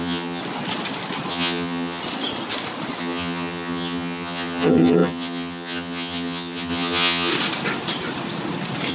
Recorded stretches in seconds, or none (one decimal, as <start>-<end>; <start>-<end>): 0.4-1.3; 2.0-3.0; 7.3-8.9